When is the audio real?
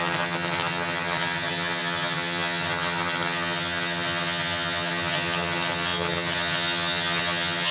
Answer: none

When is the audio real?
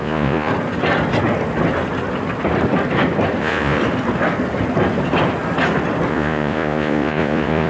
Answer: 0.5-3.4; 3.8-6.1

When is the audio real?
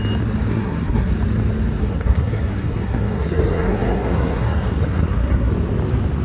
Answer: 0.0-0.5; 1.1-1.8; 5.5-6.2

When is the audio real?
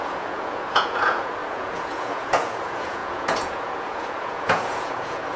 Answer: none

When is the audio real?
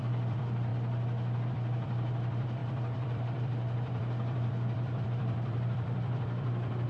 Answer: 0.7-1.5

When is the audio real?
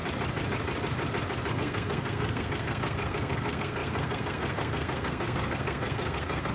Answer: 0.0-1.5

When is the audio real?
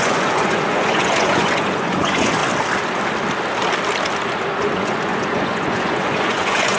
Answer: 2.4-4.6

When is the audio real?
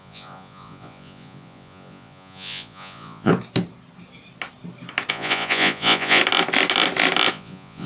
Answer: 3.3-5.1; 6.2-7.3